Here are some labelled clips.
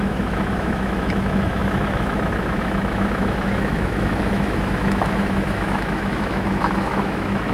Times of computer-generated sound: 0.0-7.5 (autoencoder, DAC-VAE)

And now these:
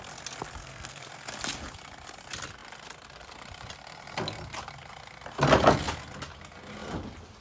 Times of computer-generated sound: 0.6-1.1 (codec, SNAC)

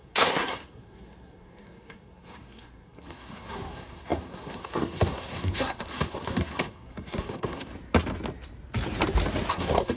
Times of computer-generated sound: 0.0-7.7 (codec, SNAC); 9.5-10.0

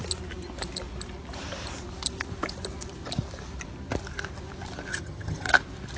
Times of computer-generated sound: 4.9-5.5 (vocoder, HiFi-GAN)